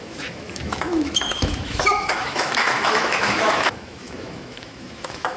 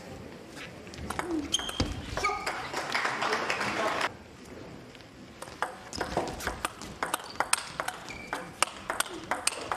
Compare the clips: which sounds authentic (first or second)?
second